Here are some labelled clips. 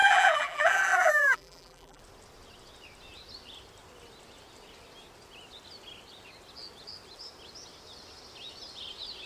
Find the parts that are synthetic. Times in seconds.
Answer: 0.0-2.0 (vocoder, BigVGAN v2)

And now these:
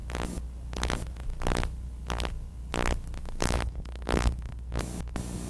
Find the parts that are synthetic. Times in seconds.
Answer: 3.2-4.8 (codec, SNAC)

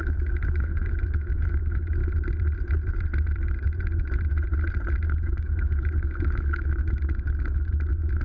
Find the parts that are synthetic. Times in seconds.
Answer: 0.0-2.0 (autoencoder, DAC-VAE); 5.1-8.2

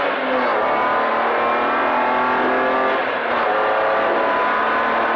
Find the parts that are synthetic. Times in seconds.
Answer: none

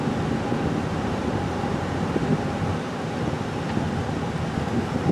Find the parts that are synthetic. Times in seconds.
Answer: none

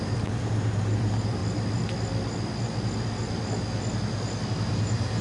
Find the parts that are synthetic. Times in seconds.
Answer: 0.0-1.4 (vocoder, BigVGAN v2); 4.5-5.2